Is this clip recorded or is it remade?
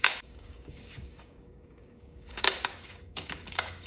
remade